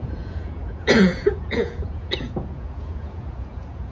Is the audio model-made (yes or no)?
yes